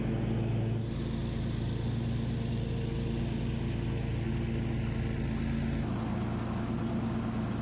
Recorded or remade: recorded